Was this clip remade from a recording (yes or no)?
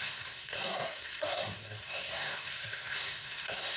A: yes